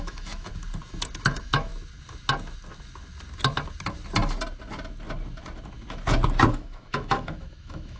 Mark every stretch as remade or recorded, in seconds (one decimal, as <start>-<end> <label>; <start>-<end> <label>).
0.0-0.5 remade; 0.5-1.2 recorded; 1.2-1.7 remade; 1.7-6.5 recorded; 6.5-8.0 remade